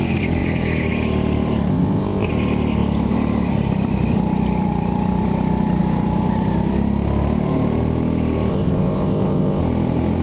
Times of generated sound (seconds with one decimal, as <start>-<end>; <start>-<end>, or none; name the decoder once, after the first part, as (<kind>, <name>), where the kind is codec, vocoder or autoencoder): 1.7-2.3 (codec, ZipCodec); 8.5-9.6